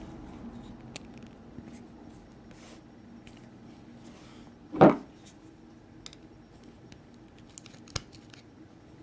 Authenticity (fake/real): real